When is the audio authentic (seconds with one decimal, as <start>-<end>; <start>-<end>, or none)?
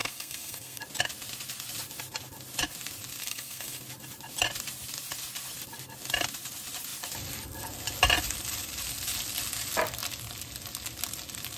0.8-3.2; 3.8-11.6